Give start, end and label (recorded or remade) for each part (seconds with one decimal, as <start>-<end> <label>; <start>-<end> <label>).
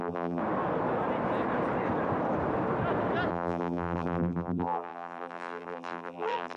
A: 0.0-0.4 remade; 0.4-3.3 recorded; 3.3-6.6 remade